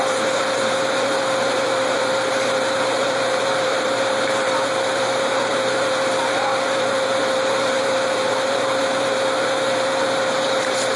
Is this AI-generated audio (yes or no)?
yes